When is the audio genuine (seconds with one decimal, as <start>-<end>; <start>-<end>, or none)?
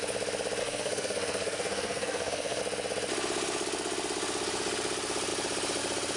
0.0-0.6; 2.6-6.2